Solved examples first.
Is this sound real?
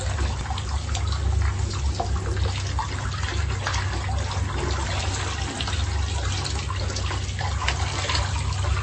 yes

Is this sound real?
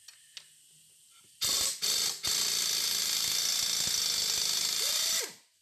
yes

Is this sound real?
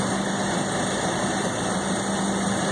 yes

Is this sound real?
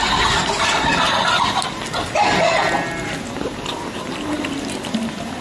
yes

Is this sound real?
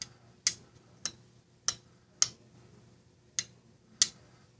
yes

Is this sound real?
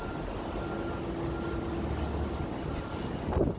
yes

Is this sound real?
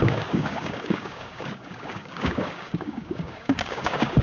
no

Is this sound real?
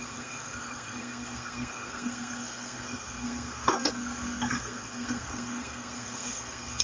no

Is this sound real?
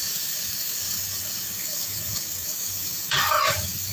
no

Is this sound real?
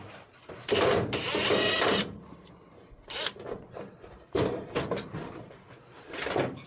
no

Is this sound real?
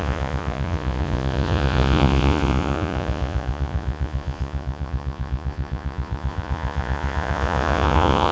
no